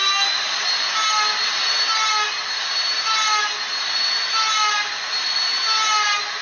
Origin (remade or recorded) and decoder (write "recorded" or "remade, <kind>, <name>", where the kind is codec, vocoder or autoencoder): recorded